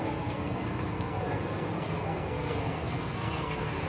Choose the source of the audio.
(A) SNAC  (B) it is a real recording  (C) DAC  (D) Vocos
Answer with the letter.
A